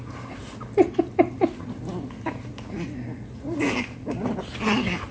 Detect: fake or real real